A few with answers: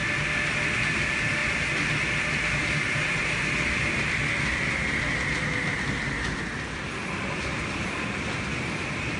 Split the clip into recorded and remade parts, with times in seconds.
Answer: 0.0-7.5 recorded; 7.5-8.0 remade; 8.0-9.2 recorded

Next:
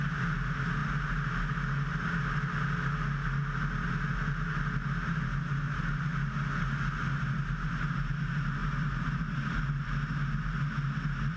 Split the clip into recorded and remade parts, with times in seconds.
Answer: 0.0-8.6 recorded; 8.6-9.6 remade; 9.6-11.4 recorded